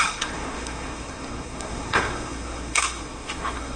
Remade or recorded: remade